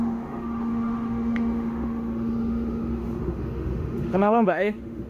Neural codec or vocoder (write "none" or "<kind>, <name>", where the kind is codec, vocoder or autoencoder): autoencoder, DAC-VAE